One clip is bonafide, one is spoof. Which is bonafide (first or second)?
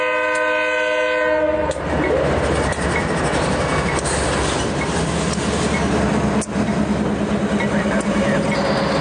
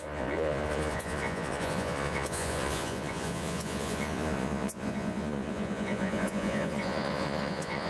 first